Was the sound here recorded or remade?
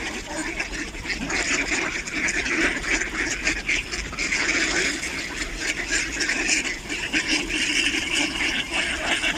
remade